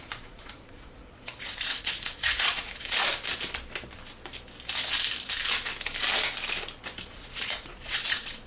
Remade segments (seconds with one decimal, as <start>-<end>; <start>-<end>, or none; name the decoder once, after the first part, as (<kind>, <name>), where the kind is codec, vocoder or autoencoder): 0.0-3.0 (vocoder, Vocos); 7.1-8.5